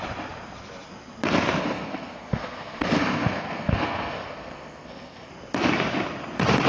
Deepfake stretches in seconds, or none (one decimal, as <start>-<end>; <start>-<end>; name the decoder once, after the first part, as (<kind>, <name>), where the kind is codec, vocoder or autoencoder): 1.6-5.3 (codec, SNAC)